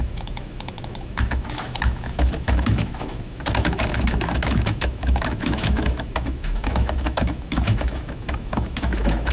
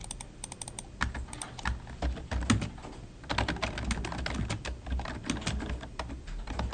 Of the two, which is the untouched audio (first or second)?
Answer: second